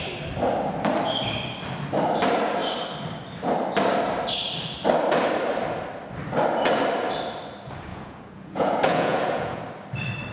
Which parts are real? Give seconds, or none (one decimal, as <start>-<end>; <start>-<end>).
0.0-7.9; 9.6-10.3